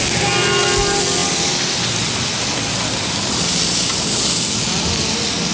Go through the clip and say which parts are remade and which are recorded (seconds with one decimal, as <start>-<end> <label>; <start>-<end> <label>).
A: 0.0-5.5 recorded